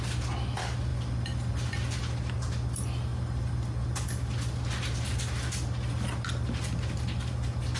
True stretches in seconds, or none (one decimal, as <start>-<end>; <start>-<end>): 0.0-7.8